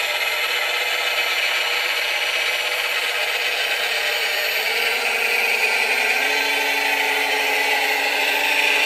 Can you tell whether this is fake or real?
real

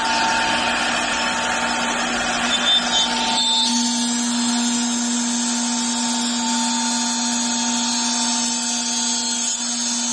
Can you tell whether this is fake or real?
real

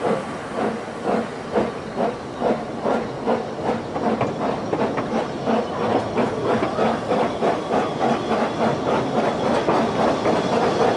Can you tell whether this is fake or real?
real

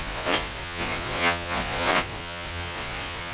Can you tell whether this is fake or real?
fake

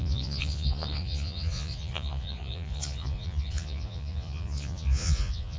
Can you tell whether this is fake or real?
fake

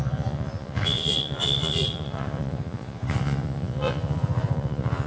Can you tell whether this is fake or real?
fake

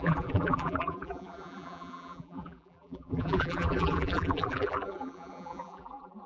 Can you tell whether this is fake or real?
fake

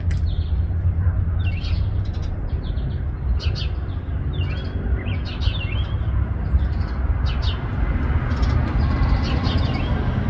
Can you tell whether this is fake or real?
real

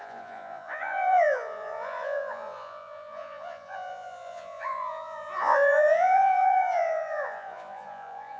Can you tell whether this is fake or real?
fake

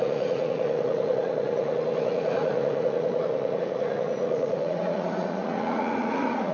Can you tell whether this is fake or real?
fake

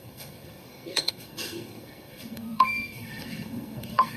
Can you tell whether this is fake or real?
fake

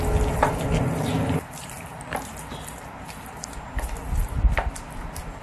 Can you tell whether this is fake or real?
real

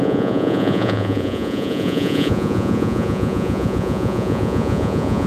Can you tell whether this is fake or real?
fake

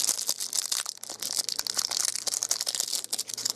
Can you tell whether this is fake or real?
real